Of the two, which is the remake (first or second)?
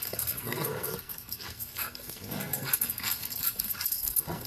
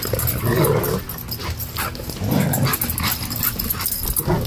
first